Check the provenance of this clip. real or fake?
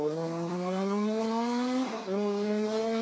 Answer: fake